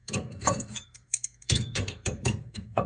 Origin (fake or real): fake